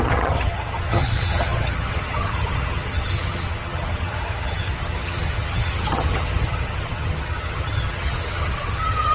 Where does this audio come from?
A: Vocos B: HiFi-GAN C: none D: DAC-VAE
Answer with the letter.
B